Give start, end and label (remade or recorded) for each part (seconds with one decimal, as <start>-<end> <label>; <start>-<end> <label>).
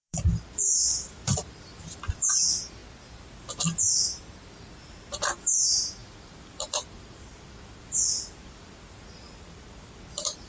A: 0.0-2.1 remade; 2.1-6.0 recorded; 6.0-10.0 remade; 10.0-10.5 recorded